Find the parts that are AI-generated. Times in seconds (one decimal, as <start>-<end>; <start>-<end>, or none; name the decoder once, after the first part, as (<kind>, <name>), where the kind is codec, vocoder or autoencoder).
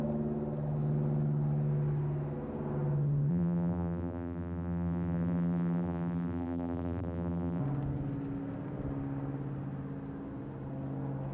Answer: 3.3-7.6 (vocoder, BigVGAN v2)